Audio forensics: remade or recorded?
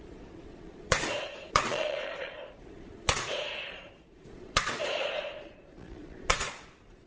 remade